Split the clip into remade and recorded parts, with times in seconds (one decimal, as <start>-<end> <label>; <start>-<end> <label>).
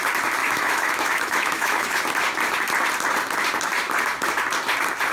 0.0-0.4 recorded; 0.4-2.0 remade; 2.0-5.1 recorded